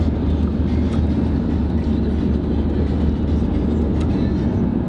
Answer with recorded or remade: recorded